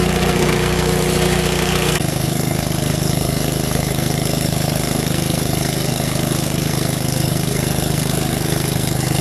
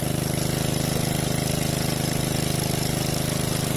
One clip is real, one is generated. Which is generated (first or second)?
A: first